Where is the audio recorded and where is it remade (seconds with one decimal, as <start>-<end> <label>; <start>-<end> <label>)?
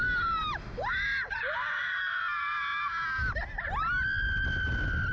0.0-5.1 recorded